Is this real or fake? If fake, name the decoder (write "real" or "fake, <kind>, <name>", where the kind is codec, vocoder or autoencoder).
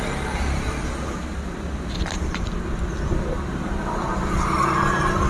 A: real